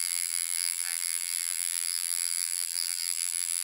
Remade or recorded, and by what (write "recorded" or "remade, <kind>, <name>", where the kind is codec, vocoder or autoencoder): remade, vocoder, BigVGAN v2